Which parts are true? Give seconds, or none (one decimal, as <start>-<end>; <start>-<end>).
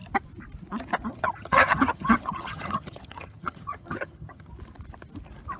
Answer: 0.0-1.1; 4.5-5.6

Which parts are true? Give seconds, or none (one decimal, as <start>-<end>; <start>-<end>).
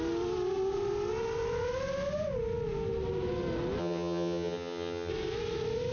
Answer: 0.0-3.8; 5.1-5.9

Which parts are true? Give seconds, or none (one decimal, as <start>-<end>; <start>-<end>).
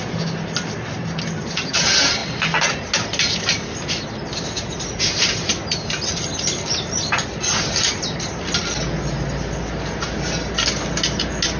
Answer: 0.0-11.6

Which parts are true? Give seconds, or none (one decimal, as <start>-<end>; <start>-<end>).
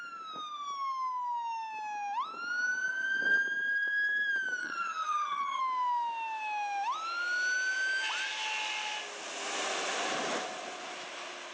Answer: 0.0-4.6; 5.6-11.5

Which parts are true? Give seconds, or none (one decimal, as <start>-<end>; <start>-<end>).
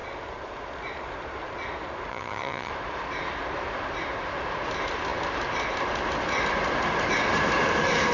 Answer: 0.0-2.1; 2.7-8.1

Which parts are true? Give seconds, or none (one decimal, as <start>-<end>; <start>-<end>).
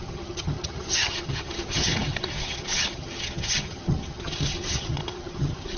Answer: none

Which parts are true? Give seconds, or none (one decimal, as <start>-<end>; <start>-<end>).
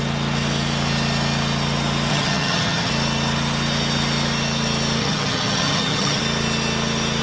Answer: 0.0-2.1; 2.9-5.0; 6.2-7.2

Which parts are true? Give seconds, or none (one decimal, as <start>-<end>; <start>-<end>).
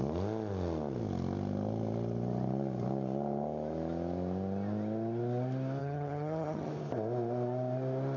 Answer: 0.0-5.8; 6.7-8.2